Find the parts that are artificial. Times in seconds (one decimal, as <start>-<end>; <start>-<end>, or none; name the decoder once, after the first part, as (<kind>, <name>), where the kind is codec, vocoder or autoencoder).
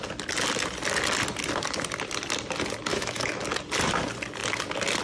2.9-3.4 (autoencoder, DAC-VAE)